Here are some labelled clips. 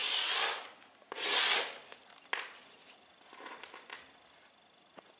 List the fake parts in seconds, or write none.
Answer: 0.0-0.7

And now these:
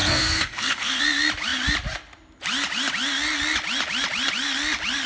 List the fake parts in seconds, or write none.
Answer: 0.0-1.0

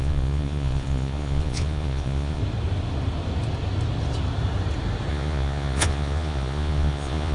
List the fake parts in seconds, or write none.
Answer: 0.0-2.4; 5.1-7.3

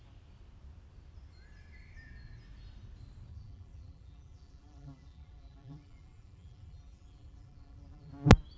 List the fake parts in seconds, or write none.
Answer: 3.3-8.1

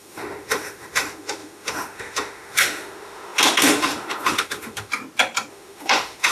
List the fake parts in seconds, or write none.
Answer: 0.0-4.9; 5.5-6.3

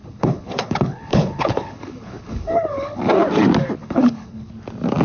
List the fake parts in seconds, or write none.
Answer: 0.0-3.0; 3.8-4.5

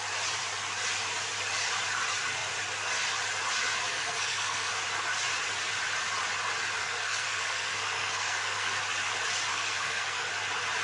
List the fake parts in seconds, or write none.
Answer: 3.9-4.7; 6.8-8.8; 9.5-10.3

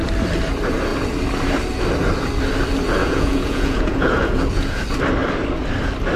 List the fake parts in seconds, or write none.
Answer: 3.0-4.8